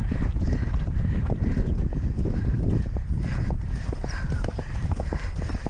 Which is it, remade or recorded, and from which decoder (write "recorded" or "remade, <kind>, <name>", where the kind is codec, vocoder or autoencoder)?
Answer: remade, vocoder, BigVGAN v2